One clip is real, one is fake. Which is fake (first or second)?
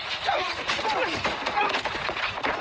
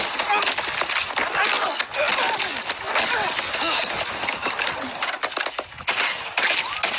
first